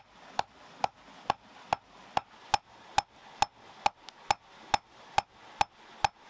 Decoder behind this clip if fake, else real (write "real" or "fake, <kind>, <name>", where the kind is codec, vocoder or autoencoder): real